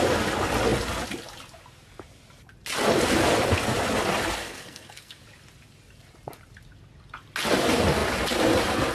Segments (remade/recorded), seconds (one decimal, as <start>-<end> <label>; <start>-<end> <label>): 0.0-4.4 recorded; 4.4-5.2 remade; 5.2-8.9 recorded

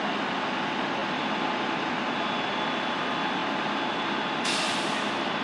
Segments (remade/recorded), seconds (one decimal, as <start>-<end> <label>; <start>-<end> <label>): 0.0-5.4 recorded

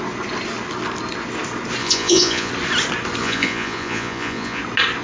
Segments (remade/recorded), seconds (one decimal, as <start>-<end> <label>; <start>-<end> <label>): 0.0-1.8 recorded; 1.8-2.5 remade; 2.5-3.2 recorded; 3.2-4.6 remade; 4.6-5.0 recorded

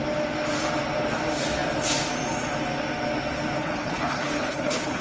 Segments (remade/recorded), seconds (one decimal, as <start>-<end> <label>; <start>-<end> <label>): 0.0-3.6 recorded; 3.6-5.0 remade

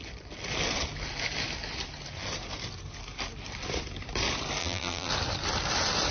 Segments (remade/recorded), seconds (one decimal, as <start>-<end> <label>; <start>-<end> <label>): 0.0-4.6 recorded; 4.6-5.1 remade; 5.1-6.1 recorded

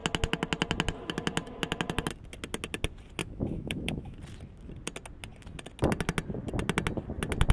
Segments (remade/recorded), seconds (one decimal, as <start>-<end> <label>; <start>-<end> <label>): 0.0-3.2 recorded; 3.2-4.2 remade; 4.2-7.5 recorded